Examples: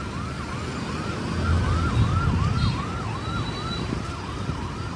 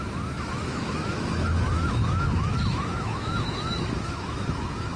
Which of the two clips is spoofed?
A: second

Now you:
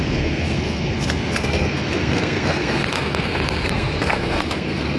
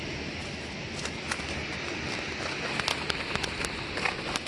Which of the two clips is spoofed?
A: first